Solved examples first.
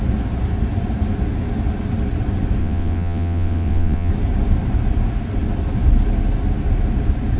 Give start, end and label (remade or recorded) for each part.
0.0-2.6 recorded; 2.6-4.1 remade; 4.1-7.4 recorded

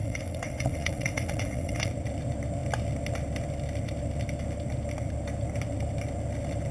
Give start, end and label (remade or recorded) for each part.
0.0-1.9 remade; 1.9-6.7 recorded

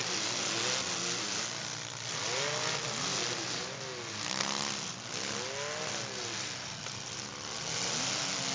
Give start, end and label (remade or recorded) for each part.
0.0-8.5 recorded

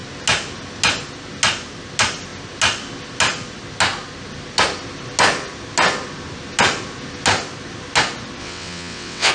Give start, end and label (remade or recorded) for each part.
0.0-8.4 recorded; 8.4-9.3 remade

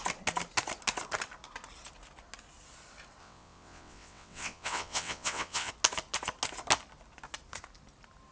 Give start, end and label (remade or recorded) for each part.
0.0-3.2 recorded; 3.2-5.7 remade; 5.7-8.3 recorded

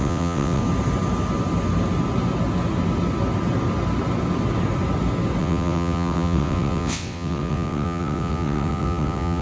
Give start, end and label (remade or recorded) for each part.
0.0-0.6 remade; 0.6-5.4 recorded; 5.4-9.4 remade